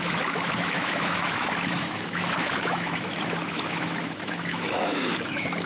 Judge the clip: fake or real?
fake